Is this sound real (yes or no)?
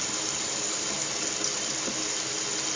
yes